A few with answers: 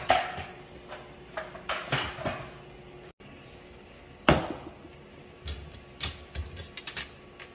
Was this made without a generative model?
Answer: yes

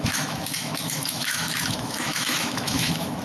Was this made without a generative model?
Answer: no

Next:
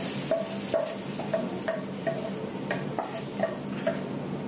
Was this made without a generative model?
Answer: yes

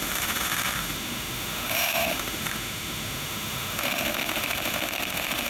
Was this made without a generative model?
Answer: no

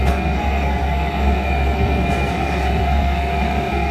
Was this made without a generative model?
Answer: no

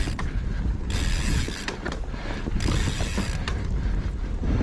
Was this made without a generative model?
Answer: yes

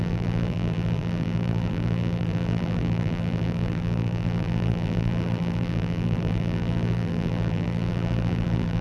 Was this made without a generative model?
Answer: no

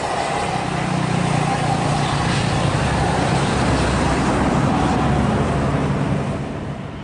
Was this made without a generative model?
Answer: yes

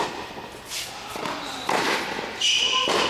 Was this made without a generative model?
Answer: no